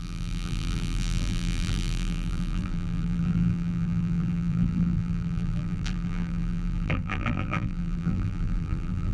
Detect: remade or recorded remade